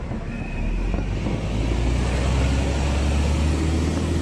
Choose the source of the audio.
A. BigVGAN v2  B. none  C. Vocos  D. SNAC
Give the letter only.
B